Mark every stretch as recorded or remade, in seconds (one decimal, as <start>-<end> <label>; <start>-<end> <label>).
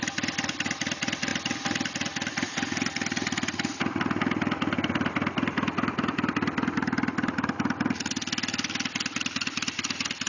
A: 0.0-10.3 recorded